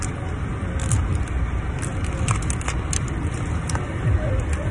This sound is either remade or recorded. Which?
recorded